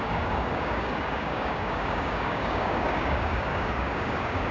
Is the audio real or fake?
fake